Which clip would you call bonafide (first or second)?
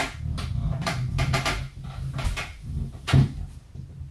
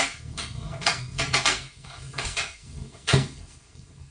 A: first